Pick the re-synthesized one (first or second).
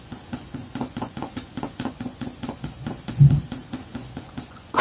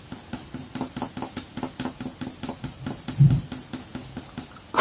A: first